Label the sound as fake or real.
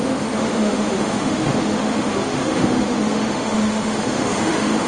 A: fake